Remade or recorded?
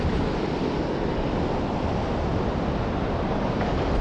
recorded